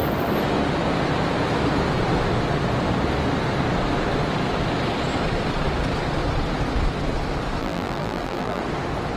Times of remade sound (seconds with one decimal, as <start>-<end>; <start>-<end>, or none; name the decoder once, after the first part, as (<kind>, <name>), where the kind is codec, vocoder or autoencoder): 7.6-8.6 (vocoder, BigVGAN v2)

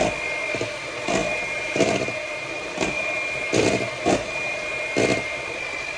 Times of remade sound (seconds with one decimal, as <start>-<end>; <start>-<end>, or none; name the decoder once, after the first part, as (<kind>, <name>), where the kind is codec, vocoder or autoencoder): 1.2-4.8 (vocoder, BigVGAN v2)